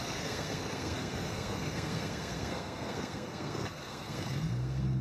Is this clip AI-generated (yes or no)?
yes